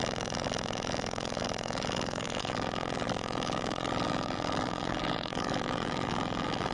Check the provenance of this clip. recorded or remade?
remade